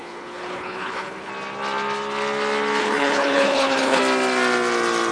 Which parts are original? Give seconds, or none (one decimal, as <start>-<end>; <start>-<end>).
1.3-2.8; 4.0-5.1